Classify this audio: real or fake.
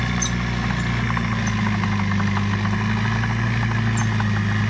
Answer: real